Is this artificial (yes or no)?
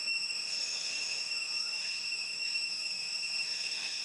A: yes